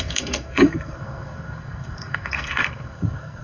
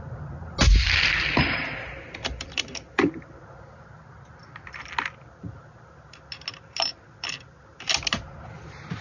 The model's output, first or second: first